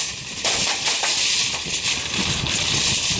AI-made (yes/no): no